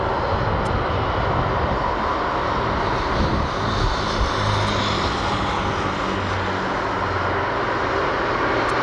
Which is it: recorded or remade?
recorded